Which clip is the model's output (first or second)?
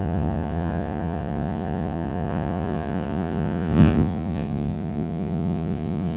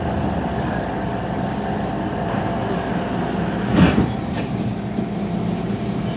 first